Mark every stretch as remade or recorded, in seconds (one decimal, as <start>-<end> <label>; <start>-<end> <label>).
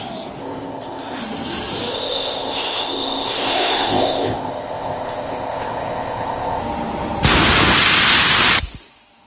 0.0-0.4 recorded; 0.4-1.2 remade; 1.2-1.9 recorded; 1.9-6.6 remade; 6.6-9.3 recorded